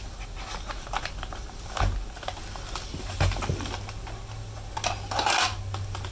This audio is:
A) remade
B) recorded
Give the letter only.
B